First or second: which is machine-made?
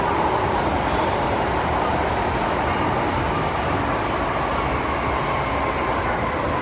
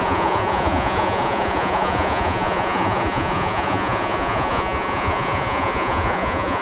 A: second